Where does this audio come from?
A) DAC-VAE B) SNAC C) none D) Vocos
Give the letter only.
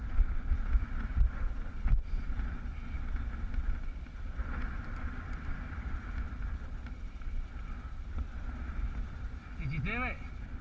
C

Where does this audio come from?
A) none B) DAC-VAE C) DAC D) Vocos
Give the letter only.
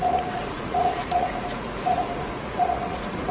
D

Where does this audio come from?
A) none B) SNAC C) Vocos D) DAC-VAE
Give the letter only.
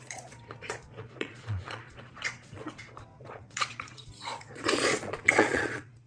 C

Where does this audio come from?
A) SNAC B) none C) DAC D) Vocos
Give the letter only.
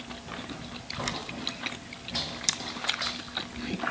B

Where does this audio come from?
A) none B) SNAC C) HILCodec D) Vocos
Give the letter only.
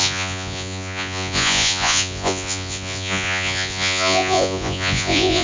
D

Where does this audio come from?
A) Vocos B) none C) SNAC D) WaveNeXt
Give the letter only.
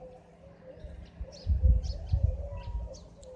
B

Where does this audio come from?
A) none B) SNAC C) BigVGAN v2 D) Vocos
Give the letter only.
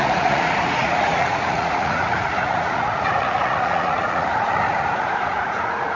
D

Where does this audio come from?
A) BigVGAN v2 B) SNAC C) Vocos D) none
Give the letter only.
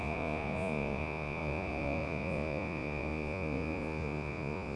C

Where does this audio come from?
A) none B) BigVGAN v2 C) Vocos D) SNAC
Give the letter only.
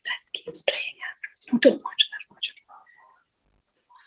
A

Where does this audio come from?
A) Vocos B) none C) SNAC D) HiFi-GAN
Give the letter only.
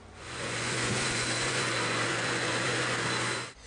A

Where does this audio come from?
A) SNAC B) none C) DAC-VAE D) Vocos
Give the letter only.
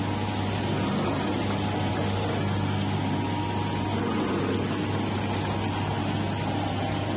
B